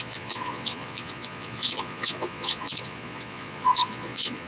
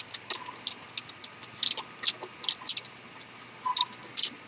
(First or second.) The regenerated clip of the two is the first